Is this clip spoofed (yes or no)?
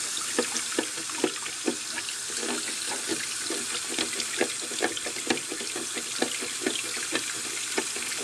no